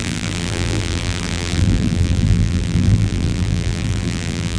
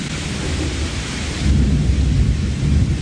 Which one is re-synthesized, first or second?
first